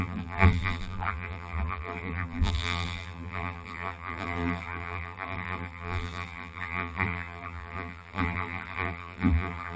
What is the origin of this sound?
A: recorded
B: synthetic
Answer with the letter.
B